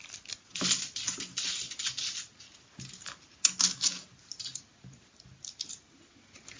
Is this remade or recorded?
recorded